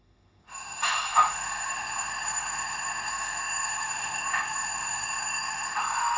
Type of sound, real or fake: fake